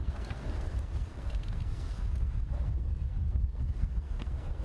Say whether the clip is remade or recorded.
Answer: remade